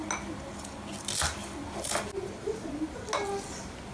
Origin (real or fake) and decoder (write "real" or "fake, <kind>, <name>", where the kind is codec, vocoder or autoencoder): real